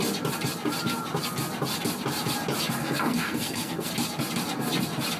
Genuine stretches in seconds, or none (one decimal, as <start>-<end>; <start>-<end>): 0.0-2.8; 3.9-5.2

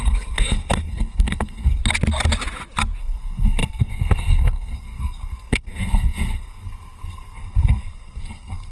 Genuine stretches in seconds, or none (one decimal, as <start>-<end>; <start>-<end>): 1.8-3.0

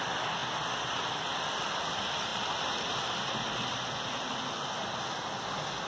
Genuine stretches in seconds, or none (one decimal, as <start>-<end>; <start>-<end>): 0.0-5.9